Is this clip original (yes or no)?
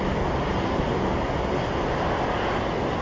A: yes